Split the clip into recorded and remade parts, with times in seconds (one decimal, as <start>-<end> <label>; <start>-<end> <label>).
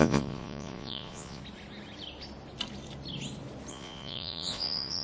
0.0-1.4 remade; 1.4-3.7 recorded; 3.7-5.0 remade